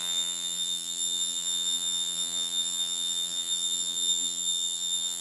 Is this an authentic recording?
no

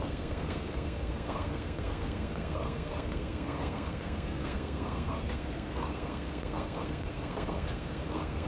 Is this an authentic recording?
no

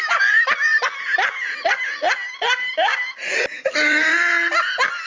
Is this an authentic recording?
yes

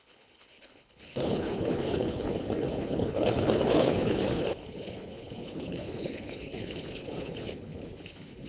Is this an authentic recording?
no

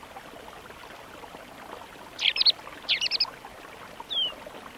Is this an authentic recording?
yes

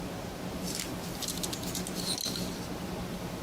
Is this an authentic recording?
yes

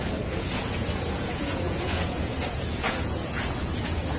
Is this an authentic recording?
no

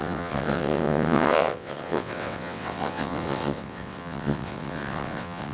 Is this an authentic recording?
no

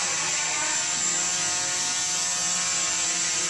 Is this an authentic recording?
yes